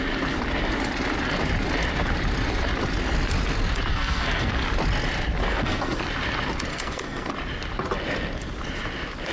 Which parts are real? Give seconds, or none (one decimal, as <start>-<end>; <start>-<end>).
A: 0.0-3.9; 4.5-5.5; 6.0-6.7; 7.3-9.3